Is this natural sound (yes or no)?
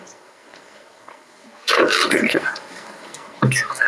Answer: no